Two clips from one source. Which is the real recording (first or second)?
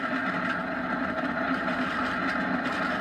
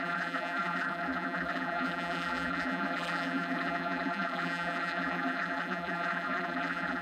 first